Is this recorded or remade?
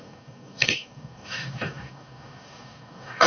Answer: remade